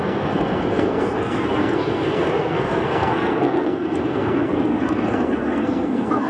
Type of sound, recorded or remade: remade